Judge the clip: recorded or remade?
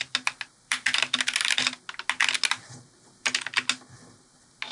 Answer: recorded